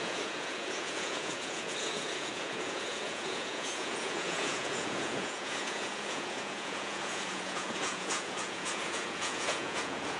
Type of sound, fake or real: fake